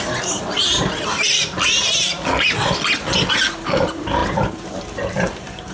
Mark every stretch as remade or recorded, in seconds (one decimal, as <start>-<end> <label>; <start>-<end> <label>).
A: 0.0-1.8 remade; 1.8-3.3 recorded; 3.3-5.7 remade